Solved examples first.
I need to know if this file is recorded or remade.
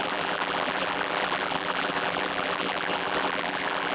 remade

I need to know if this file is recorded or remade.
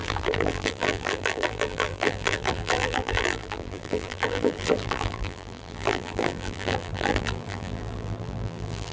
remade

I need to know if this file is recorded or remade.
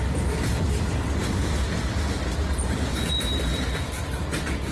recorded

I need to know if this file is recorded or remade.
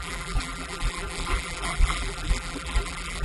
remade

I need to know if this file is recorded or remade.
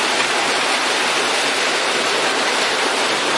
remade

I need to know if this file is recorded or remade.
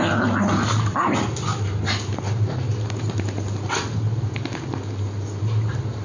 recorded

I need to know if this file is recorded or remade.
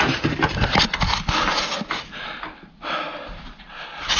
recorded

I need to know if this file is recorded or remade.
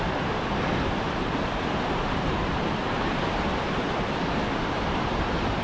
remade